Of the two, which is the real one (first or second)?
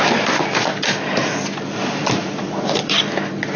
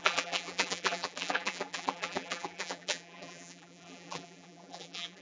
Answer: first